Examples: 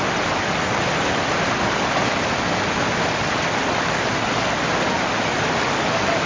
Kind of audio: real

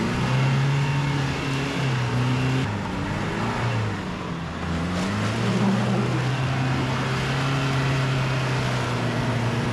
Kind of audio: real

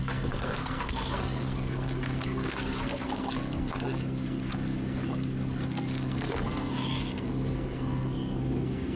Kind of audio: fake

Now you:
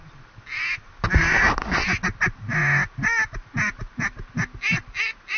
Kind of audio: real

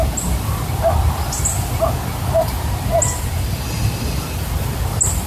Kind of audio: real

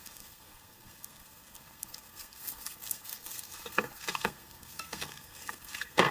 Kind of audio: fake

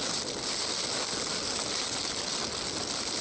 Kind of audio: real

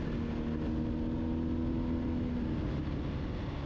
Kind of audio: real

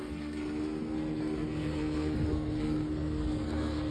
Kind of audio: fake